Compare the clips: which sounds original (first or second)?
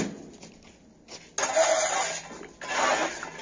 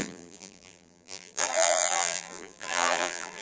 first